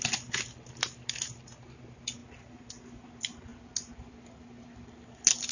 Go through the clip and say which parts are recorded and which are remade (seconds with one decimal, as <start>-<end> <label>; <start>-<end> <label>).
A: 0.0-5.5 recorded